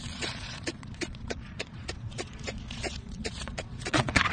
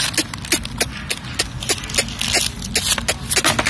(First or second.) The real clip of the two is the second